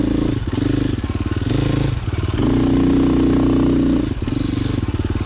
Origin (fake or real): real